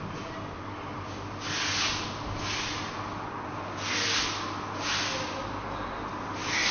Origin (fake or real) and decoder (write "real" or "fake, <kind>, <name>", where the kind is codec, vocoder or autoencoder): real